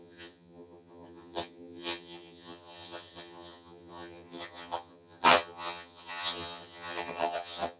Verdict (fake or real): fake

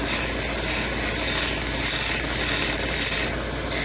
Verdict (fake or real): real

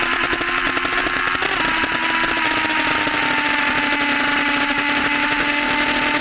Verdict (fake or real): real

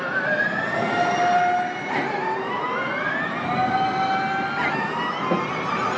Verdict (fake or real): real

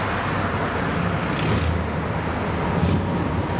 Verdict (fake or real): real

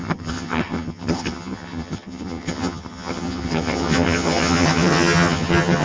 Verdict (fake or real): fake